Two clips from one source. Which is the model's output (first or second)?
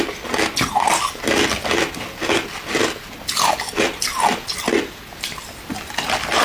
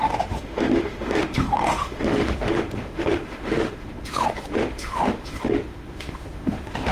second